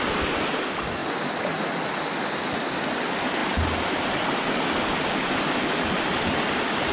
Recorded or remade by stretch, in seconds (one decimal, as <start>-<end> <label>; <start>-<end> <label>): 0.0-6.9 recorded